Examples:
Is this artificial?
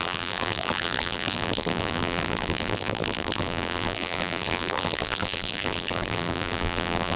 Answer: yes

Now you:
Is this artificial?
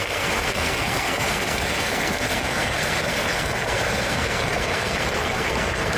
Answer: yes